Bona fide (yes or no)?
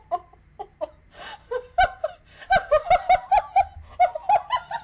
yes